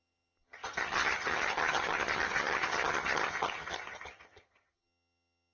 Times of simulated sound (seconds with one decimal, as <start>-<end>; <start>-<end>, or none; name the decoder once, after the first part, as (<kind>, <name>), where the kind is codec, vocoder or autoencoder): 0.0-5.5 (vocoder, HiFi-GAN)